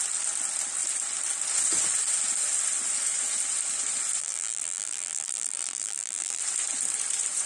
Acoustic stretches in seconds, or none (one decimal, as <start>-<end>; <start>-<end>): 0.0-4.2; 6.4-7.5